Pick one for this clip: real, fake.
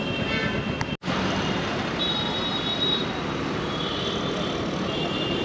real